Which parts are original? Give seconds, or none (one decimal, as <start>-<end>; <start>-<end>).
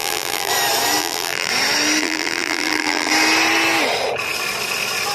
0.5-1.0; 1.5-2.0; 3.1-5.1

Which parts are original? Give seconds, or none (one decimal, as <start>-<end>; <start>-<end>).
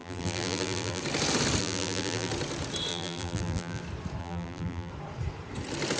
1.0-1.6; 2.3-2.9; 3.8-4.2; 4.9-6.0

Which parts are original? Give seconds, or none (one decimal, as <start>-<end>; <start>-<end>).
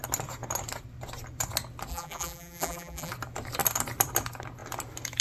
0.0-1.9; 3.1-5.2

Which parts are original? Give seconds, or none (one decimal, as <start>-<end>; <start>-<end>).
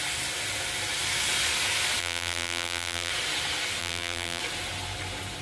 0.0-2.0; 3.1-3.8; 4.4-5.4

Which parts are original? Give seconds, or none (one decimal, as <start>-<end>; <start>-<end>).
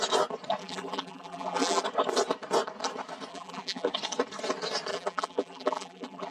0.0-0.6; 1.8-3.3; 3.9-4.9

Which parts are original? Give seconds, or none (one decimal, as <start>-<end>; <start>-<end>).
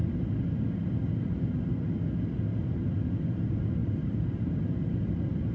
0.0-3.8; 4.3-5.5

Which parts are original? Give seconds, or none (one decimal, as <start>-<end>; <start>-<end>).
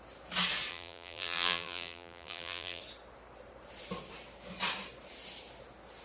0.0-0.7; 2.8-6.0